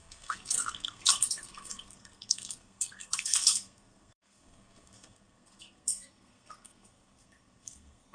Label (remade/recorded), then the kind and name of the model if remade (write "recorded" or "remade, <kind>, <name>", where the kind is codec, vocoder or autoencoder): remade, codec, SNAC